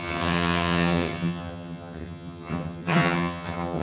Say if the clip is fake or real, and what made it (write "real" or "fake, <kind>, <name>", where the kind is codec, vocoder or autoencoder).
fake, vocoder, HiFi-GAN